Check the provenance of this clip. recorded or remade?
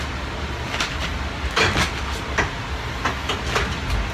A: recorded